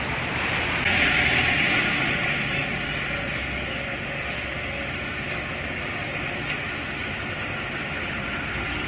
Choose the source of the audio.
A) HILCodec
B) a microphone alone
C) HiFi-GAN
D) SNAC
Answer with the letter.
B